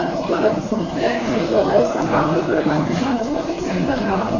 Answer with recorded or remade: remade